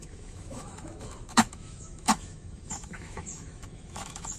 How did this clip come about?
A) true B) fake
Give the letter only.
B